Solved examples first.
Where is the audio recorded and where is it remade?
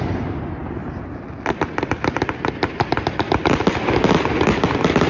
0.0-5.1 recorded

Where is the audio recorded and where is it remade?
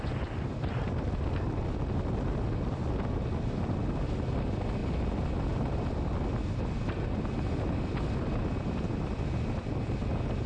0.0-10.5 recorded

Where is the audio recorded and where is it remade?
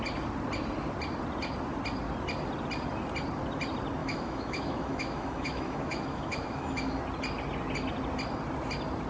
0.0-4.0 recorded; 4.0-7.0 remade; 7.0-9.1 recorded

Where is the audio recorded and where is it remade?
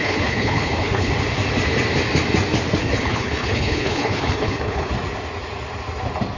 0.0-1.1 remade; 1.1-2.8 recorded; 2.8-4.9 remade; 4.9-6.4 recorded